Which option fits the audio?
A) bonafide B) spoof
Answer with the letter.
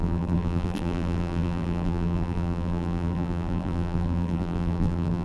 B